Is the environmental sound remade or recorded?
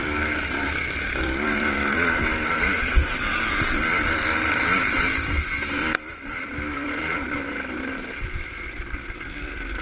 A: remade